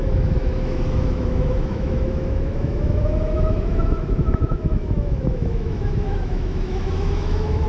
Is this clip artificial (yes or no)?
yes